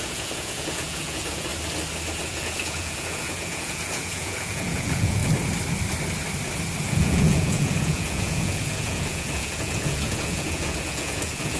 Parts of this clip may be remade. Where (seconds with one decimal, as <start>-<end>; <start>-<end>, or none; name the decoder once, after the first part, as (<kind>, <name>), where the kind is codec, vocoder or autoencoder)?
0.0-1.5 (vocoder, Vocos); 2.2-5.2; 6.8-11.6